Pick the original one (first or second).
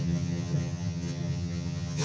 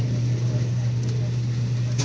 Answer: second